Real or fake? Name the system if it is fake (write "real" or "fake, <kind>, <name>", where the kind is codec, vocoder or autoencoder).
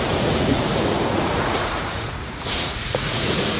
fake, vocoder, Vocos